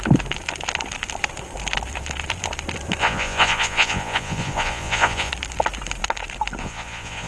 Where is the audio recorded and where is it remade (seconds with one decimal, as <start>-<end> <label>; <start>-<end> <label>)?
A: 0.0-3.0 recorded; 3.0-5.3 remade; 5.3-6.6 recorded; 6.6-7.3 remade